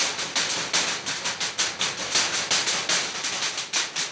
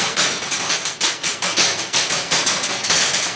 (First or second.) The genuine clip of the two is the first